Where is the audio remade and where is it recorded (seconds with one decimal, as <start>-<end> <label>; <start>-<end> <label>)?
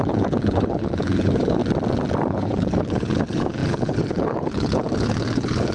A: 0.0-1.6 remade; 1.6-2.2 recorded; 2.2-5.7 remade